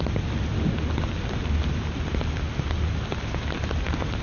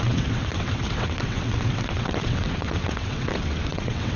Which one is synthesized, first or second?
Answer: second